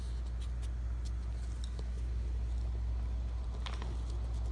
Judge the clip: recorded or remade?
recorded